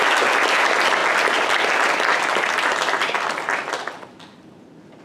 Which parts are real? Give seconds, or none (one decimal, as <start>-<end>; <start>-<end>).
0.0-1.0; 4.0-5.0